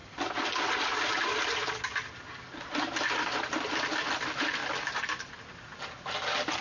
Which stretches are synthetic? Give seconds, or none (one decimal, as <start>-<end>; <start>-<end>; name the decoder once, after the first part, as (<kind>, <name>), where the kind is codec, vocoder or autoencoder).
0.0-2.2 (vocoder, BigVGAN v2)